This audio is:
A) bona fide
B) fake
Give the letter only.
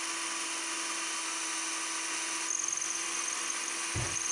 A